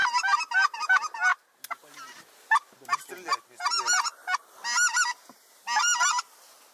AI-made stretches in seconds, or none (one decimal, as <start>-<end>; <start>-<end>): none